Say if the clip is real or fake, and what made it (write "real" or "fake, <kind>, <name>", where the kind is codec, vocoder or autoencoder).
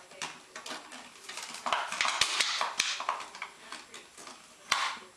real